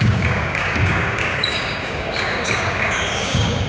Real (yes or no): no